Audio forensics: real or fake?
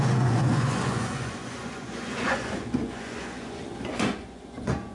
fake